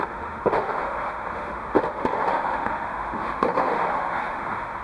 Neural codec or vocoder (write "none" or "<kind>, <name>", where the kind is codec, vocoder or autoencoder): autoencoder, DAC-VAE